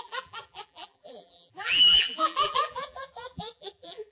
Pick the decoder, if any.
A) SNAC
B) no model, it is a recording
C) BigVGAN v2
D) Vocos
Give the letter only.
C